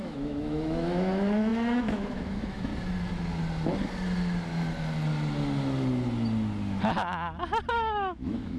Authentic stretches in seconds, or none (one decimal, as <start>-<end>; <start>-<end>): 2.7-7.7